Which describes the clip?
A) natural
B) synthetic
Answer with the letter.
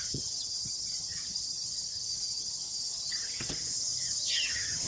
B